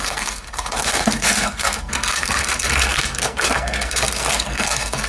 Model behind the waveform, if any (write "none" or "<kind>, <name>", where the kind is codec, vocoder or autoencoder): codec, SNAC